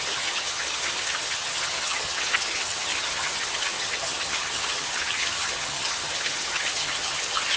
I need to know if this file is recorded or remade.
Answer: remade